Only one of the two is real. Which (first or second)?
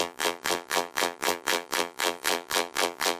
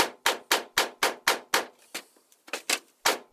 second